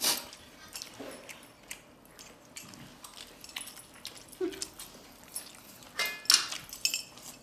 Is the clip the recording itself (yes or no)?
yes